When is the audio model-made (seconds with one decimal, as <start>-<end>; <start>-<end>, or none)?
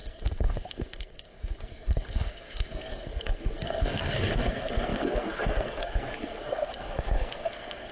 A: 0.0-7.9